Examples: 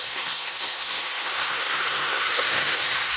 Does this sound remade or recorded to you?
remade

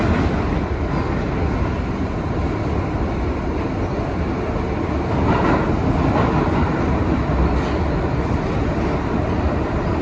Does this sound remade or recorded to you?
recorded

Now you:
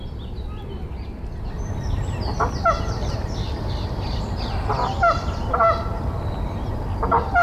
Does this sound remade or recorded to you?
recorded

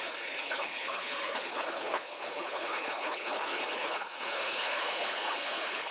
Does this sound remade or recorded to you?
remade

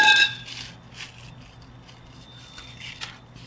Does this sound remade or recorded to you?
recorded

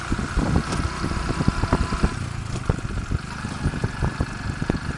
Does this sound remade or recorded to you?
recorded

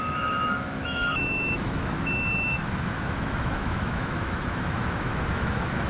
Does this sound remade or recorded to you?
remade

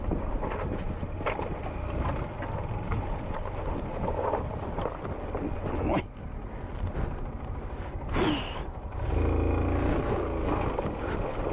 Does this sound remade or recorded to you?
recorded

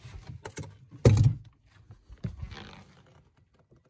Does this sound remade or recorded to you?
recorded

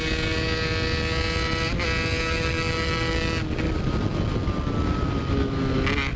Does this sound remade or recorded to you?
recorded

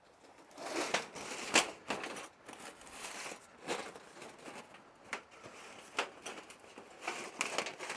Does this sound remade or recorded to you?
recorded